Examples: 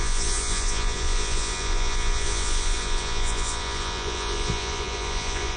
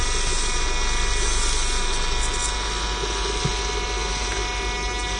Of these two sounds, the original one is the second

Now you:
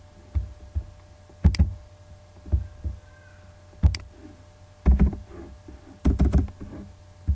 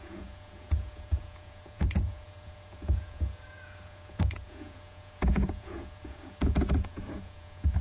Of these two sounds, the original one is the first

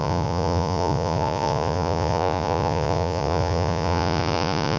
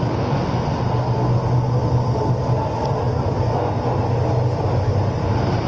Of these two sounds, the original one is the second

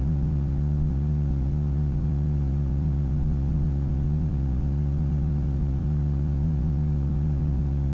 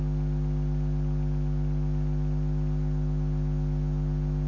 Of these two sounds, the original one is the second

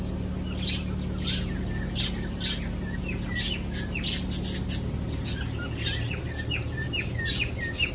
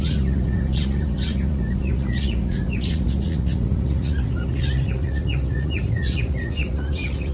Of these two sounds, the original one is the first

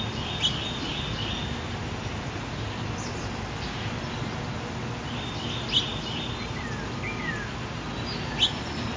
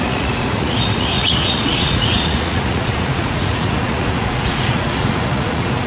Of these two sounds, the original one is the first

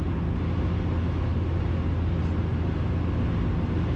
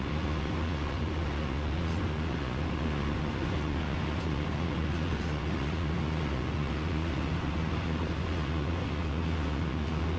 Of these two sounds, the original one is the first